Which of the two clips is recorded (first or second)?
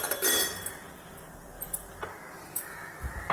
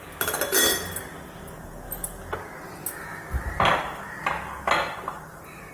second